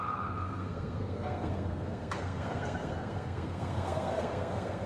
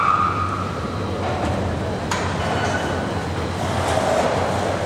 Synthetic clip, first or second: first